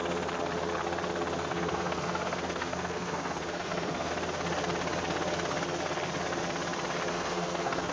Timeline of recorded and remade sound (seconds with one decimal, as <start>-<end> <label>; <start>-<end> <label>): 0.0-1.5 recorded; 1.5-4.1 remade; 4.1-7.1 recorded; 7.1-7.9 remade